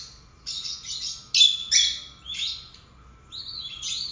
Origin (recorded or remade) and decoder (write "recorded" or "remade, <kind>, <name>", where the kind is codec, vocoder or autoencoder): recorded